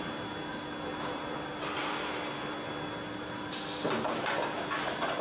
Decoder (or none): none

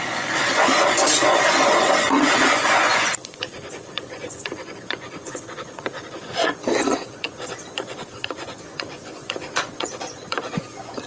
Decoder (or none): vocoder, Vocos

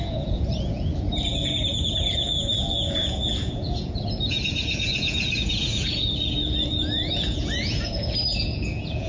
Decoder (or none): vocoder, Vocos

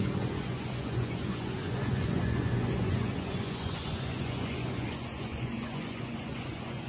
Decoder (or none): vocoder, Vocos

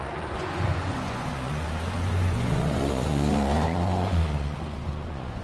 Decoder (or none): vocoder, Vocos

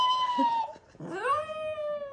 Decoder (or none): none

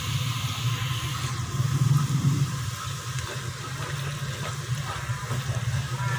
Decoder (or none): none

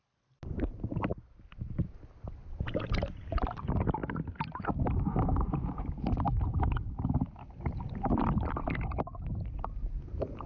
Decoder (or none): none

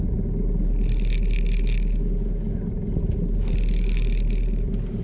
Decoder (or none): none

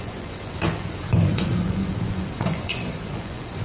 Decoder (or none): vocoder, Vocos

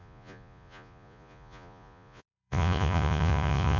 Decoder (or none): vocoder, Vocos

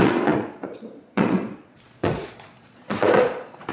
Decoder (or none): vocoder, Vocos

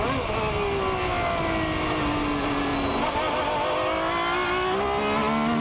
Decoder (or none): none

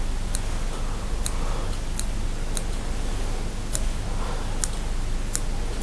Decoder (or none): none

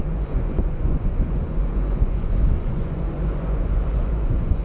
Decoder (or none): vocoder, Vocos